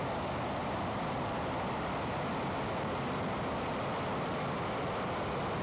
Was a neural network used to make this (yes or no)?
no